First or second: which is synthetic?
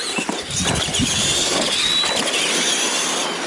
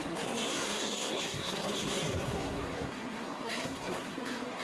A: second